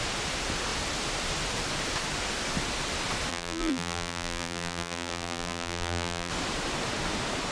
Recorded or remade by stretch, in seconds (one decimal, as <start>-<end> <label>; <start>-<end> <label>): 0.0-3.3 recorded; 3.3-6.3 remade; 6.3-7.5 recorded